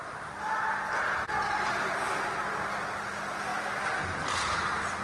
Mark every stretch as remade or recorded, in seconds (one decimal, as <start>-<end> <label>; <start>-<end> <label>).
0.0-5.0 recorded